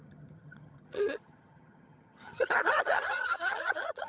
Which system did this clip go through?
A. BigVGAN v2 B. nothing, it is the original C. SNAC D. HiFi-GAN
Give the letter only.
D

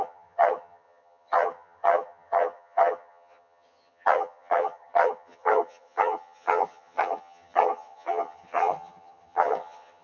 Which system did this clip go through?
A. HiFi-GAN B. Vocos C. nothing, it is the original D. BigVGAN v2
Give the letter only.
A